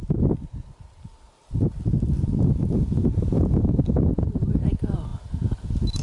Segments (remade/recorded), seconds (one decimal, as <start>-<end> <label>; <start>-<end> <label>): 0.0-3.6 remade; 3.6-6.0 recorded